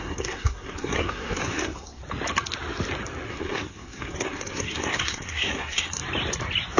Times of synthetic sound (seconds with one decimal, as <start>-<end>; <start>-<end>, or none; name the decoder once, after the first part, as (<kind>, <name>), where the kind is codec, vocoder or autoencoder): 0.0-2.0 (codec, SNAC); 3.3-6.0